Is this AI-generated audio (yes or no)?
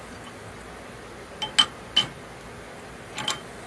no